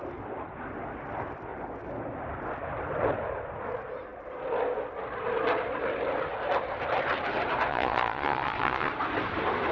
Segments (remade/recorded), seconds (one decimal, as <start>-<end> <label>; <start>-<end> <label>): 0.0-7.7 recorded; 7.7-8.9 remade; 8.9-9.7 recorded